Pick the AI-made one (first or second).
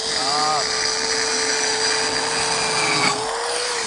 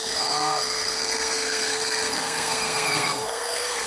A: second